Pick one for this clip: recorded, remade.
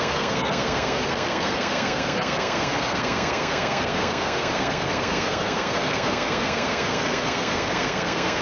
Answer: remade